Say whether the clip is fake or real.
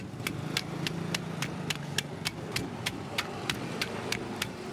real